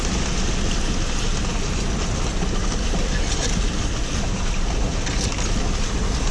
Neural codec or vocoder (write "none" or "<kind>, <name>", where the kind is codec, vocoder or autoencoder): none